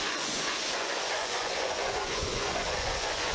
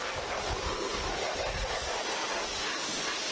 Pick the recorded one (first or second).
second